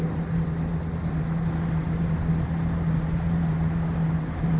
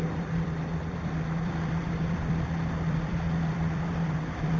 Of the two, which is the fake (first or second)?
second